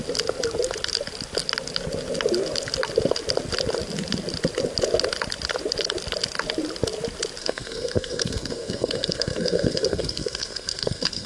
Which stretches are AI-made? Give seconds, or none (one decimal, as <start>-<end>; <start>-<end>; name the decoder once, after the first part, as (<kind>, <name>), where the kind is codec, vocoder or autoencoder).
7.4-11.3 (codec, SNAC)